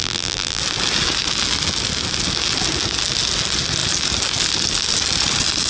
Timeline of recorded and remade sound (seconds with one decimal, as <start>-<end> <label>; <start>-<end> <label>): 0.0-0.6 remade; 0.6-5.7 recorded